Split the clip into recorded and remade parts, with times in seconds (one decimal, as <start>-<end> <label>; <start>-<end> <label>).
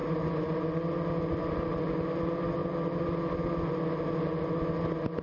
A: 0.0-5.2 recorded